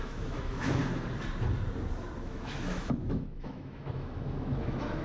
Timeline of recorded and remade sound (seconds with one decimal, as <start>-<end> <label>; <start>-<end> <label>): 0.0-0.8 remade; 0.8-2.2 recorded; 2.2-5.0 remade